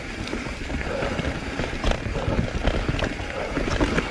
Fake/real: real